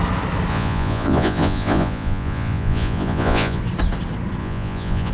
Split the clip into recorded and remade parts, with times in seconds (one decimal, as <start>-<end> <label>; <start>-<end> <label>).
0.0-0.5 recorded; 0.5-3.6 remade; 3.6-4.4 recorded; 4.4-5.1 remade